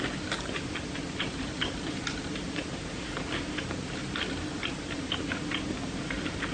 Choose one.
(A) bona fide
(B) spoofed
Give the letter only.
B